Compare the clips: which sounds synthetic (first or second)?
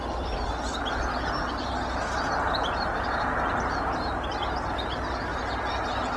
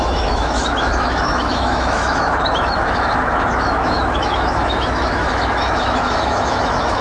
second